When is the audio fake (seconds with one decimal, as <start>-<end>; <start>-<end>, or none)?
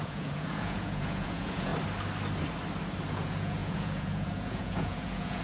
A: 0.0-1.7; 3.1-5.4